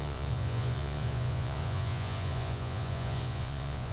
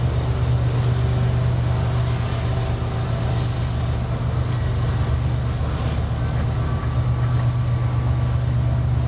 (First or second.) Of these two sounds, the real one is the second